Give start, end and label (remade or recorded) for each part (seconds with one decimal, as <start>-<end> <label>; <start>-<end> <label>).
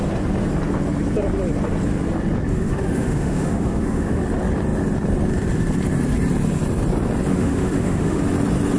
0.0-2.5 recorded; 2.5-4.2 remade; 4.2-7.3 recorded; 7.3-8.2 remade; 8.2-8.8 recorded